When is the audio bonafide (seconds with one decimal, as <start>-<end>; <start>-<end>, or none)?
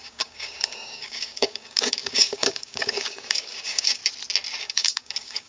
4.0-4.6